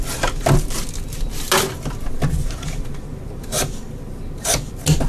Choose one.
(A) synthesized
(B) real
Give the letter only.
B